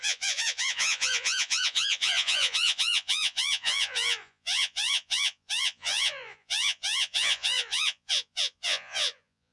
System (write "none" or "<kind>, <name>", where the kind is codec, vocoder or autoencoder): vocoder, Vocos